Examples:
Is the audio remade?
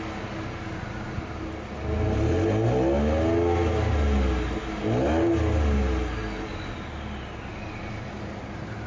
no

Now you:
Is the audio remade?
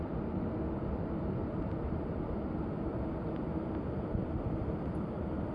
no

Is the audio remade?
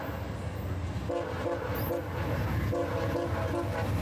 no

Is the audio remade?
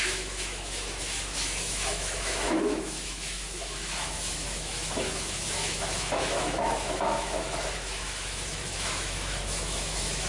yes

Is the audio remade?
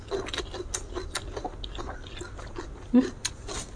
no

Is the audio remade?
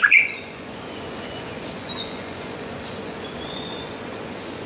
yes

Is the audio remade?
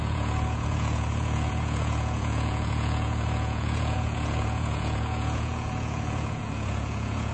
yes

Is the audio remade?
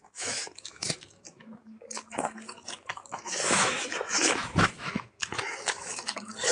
yes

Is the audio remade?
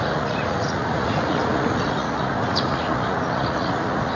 yes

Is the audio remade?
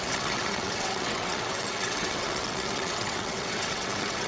yes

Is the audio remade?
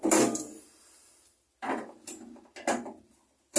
no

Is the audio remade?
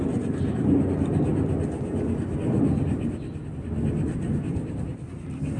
no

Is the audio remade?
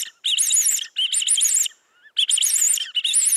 no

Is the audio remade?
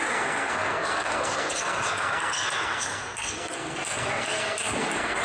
yes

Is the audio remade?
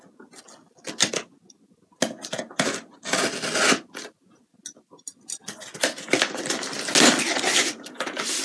no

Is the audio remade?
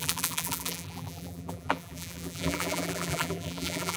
yes